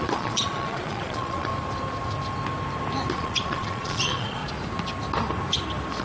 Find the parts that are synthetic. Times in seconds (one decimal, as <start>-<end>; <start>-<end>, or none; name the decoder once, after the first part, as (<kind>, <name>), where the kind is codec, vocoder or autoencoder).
0.0-1.5 (vocoder, Vocos); 3.1-4.4